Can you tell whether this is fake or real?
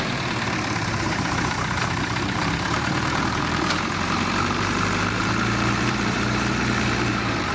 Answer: fake